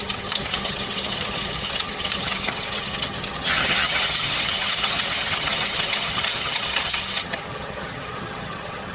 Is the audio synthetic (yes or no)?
yes